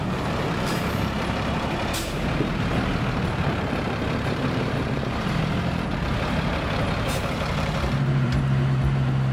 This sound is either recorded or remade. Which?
remade